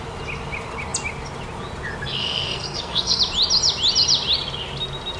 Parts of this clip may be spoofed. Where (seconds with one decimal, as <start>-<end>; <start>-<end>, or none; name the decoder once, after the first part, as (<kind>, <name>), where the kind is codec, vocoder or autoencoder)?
2.2-3.2 (codec, SNAC)